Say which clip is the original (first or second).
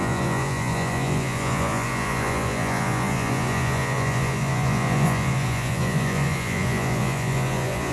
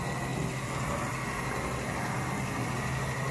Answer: second